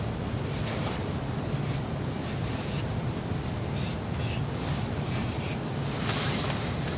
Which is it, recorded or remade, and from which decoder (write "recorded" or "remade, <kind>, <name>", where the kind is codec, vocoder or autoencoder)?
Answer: recorded